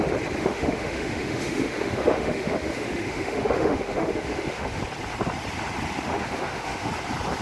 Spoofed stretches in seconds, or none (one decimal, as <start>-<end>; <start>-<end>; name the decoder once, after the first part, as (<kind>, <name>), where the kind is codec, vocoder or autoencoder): 0.4-4.8 (autoencoder, DAC-VAE); 6.1-6.9

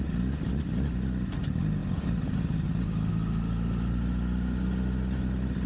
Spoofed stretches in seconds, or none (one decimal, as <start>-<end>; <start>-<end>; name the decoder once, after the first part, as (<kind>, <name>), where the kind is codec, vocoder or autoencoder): none

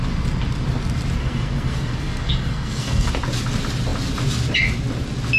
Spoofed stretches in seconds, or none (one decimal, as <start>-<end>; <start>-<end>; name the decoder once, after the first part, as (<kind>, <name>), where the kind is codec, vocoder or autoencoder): 1.2-3.1 (codec, SNAC)

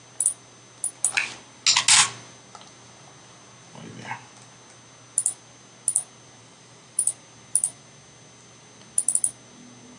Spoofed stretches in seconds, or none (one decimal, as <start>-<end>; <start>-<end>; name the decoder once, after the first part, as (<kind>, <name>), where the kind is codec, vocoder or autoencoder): 6.4-7.1 (vocoder, BigVGAN v2)

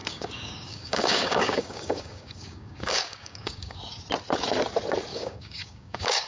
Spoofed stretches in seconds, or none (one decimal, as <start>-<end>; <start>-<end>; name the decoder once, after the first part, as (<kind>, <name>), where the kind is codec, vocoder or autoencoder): 0.0-3.8 (codec, DAC); 5.1-6.3